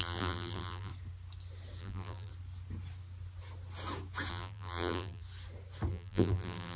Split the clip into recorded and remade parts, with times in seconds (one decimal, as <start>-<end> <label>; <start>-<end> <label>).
0.0-0.9 remade; 0.9-1.8 recorded; 1.8-2.3 remade; 2.3-4.3 recorded; 4.3-5.2 remade; 5.2-5.9 recorded; 5.9-6.8 remade